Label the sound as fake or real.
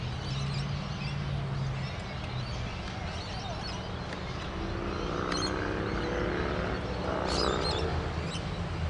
real